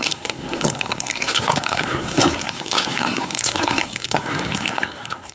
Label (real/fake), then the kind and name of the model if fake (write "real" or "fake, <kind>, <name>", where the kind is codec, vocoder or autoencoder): fake, codec, SNAC